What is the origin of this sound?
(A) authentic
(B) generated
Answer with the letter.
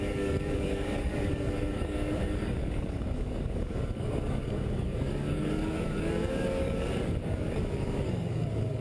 B